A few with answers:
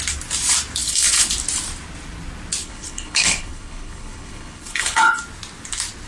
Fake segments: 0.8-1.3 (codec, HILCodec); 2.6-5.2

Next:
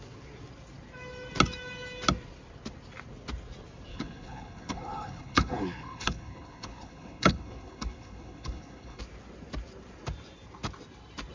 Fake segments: 3.9-9.0 (codec, HILCodec)

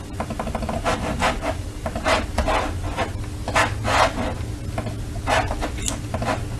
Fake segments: none

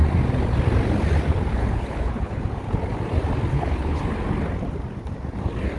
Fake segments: 1.5-2.4 (codec, HILCodec); 3.5-4.0

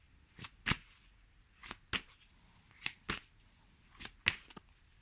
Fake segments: none

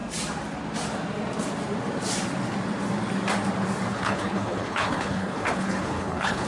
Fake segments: 3.9-6.5 (codec, HILCodec)

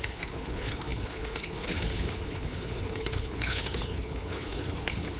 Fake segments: 0.0-5.2 (codec, HILCodec)